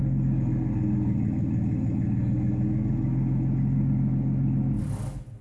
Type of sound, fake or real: real